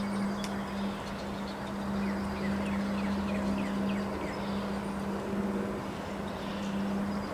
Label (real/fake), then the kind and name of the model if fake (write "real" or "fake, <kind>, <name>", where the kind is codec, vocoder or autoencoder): real